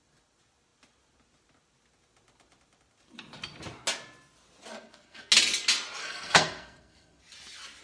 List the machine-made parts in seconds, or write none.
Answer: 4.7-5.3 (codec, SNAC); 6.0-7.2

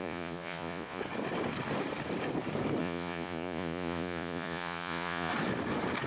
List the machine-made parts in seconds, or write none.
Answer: 0.0-1.0 (vocoder, Vocos); 2.8-5.3

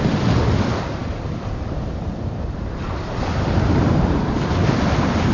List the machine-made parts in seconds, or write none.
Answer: 1.0-4.2 (vocoder, BigVGAN v2)

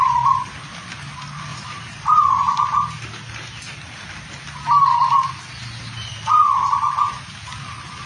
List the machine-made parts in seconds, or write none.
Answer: 1.5-2.2 (vocoder, BigVGAN v2)

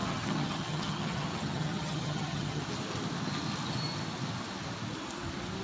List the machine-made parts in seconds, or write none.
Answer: 0.0-2.6 (vocoder, HiFi-GAN)

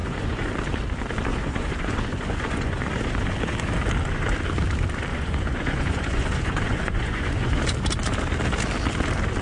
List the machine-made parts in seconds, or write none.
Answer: 0.0-0.5 (vocoder, Vocos); 1.3-3.1; 5.1-7.6

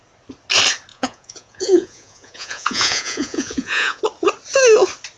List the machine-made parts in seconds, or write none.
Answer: 0.9-4.0 (vocoder, Vocos)